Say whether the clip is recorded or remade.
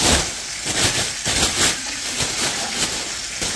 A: recorded